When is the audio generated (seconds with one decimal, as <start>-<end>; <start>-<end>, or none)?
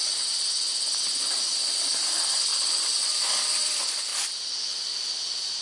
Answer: 2.5-3.0